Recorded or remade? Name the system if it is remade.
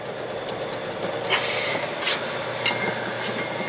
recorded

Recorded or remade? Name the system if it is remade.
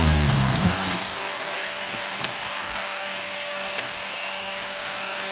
remade, codec, DAC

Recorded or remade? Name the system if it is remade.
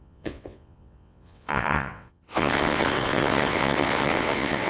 remade, vocoder, WaveNeXt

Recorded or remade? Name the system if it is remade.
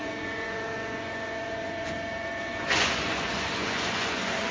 remade, vocoder, Vocos